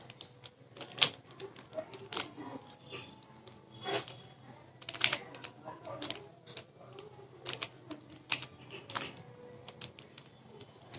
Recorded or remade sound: recorded